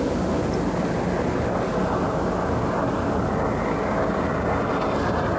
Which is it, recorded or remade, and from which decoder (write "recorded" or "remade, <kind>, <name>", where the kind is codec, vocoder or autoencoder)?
recorded